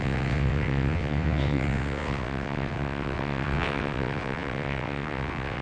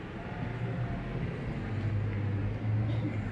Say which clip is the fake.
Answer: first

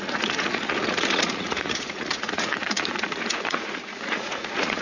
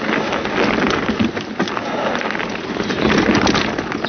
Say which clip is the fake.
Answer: first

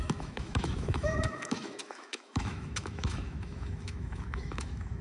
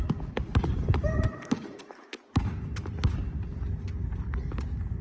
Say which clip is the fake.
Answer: first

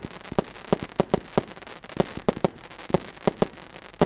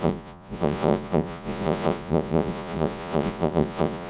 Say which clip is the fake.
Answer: second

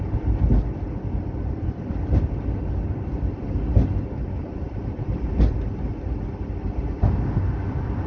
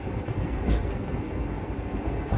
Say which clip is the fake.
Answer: second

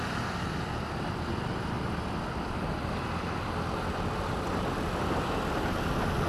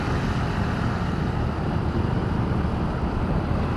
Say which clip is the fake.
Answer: second